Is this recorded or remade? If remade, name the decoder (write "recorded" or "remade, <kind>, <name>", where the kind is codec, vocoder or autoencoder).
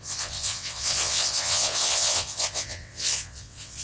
remade, vocoder, WaveNeXt